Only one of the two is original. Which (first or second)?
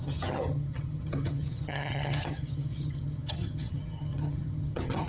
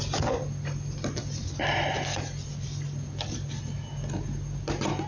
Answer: second